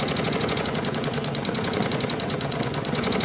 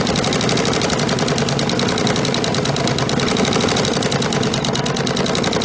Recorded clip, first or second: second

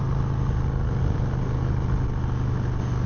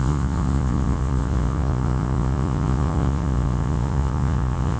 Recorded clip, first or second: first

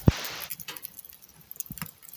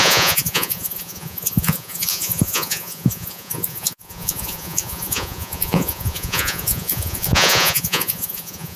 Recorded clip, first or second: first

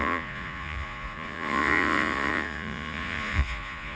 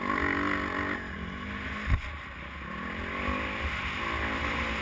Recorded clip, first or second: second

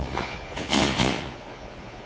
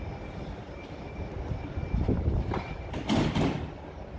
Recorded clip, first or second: second